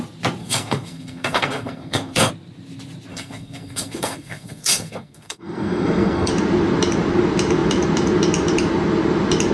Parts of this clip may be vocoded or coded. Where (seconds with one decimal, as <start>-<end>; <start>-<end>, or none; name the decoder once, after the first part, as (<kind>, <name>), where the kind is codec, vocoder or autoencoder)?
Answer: 0.4-2.3 (codec, SNAC); 3.1-6.3